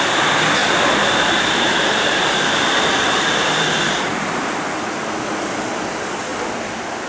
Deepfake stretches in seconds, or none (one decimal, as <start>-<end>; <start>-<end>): 0.6-4.8